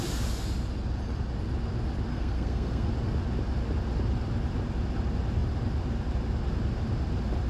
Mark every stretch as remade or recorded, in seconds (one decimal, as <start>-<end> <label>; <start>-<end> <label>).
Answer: 0.0-2.1 recorded; 2.1-2.9 remade; 2.9-7.5 recorded